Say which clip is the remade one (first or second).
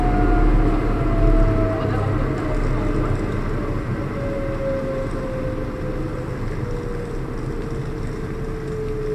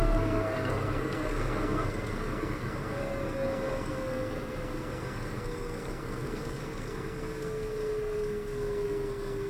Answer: second